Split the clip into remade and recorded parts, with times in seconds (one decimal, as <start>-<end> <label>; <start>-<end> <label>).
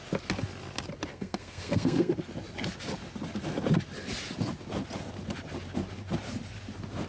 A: 0.0-1.1 recorded; 1.1-2.1 remade; 2.1-7.1 recorded